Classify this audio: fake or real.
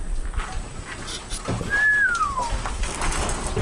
real